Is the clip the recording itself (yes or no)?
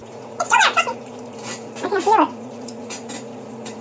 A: no